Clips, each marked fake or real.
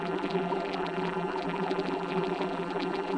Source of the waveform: fake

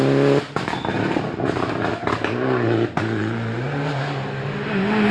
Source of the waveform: real